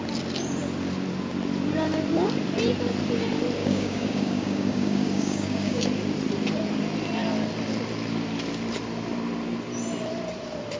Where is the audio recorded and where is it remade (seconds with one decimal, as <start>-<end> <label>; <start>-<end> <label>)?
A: 0.0-3.6 recorded; 3.6-5.8 remade; 5.8-10.8 recorded